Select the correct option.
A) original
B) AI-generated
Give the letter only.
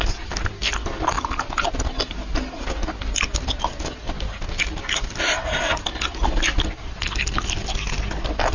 A